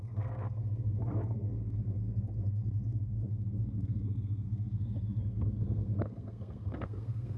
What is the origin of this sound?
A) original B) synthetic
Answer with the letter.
B